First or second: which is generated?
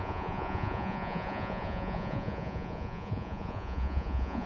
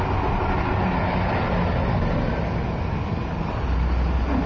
first